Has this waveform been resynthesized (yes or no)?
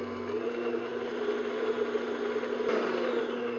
no